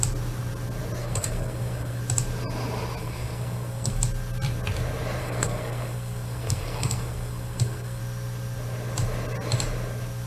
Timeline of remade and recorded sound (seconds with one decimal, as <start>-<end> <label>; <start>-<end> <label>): 0.0-1.0 recorded; 1.0-2.0 remade; 2.0-3.0 recorded; 3.0-4.0 remade; 4.0-5.2 recorded; 5.2-8.0 remade; 8.0-10.3 recorded